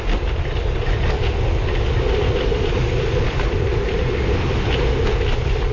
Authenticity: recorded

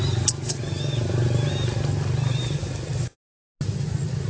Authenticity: recorded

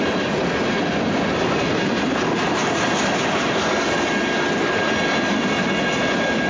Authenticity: recorded